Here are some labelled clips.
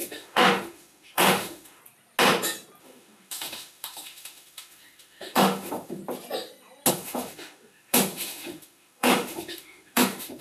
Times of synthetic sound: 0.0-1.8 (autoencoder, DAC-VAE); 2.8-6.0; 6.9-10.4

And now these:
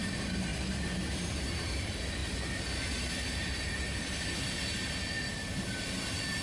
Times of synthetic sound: none

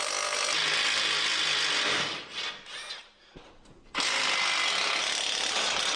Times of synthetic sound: none

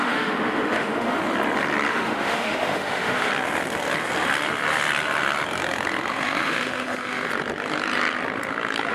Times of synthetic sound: 0.0-1.2 (autoencoder, DAC-VAE); 1.9-3.3; 6.1-7.3

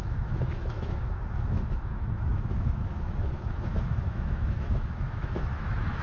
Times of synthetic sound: 0.0-6.0 (autoencoder, DAC-VAE)

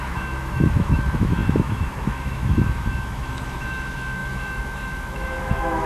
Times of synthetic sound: 0.0-5.9 (autoencoder, DAC-VAE)

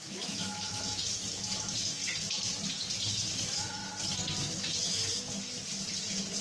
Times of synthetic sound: 0.0-2.0 (autoencoder, DAC-VAE); 3.1-3.8; 4.4-5.0; 6.0-6.4

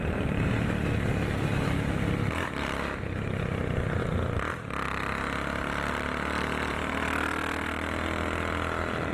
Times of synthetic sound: none